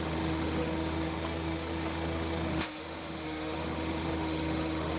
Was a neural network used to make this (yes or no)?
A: yes